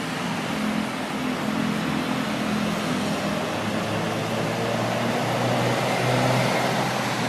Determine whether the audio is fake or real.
real